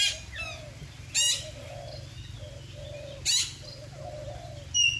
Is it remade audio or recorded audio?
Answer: recorded